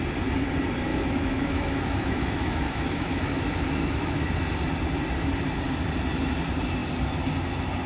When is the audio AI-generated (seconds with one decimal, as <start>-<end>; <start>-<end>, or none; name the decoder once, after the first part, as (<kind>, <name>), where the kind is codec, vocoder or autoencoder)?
0.9-4.3 (autoencoder, DAC-VAE)